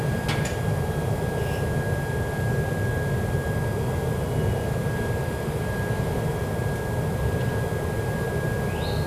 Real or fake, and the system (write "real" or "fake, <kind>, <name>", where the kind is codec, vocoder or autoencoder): real